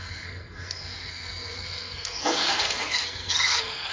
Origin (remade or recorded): remade